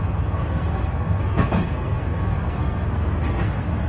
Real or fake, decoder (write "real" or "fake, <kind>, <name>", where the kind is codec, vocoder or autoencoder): fake, codec, SNAC